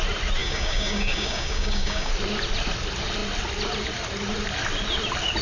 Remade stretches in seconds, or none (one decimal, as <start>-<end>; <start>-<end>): 0.4-2.1